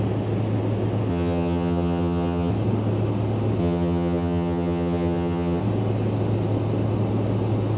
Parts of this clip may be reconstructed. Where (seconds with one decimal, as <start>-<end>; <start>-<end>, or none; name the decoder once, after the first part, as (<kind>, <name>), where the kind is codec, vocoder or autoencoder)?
1.1-2.5 (vocoder, HiFi-GAN); 3.6-5.6